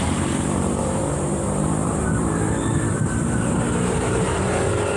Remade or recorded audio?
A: remade